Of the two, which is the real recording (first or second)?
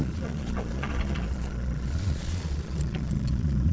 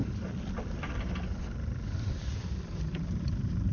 second